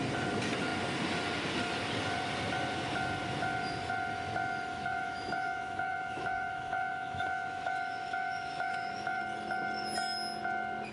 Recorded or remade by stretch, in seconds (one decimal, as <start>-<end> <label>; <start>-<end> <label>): 0.0-4.7 recorded; 4.7-9.2 remade; 9.2-10.9 recorded